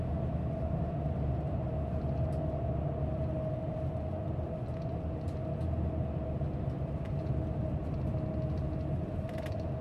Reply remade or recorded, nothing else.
recorded